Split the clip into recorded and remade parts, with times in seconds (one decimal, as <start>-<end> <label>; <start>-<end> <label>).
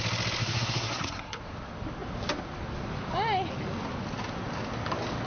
0.0-0.4 recorded; 0.4-1.4 remade; 1.4-5.3 recorded